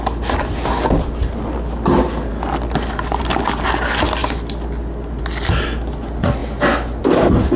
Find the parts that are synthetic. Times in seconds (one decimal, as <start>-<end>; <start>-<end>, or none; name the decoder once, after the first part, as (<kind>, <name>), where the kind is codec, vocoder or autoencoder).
none